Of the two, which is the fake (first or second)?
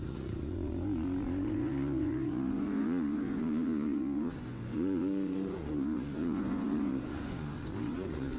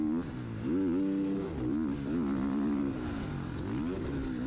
first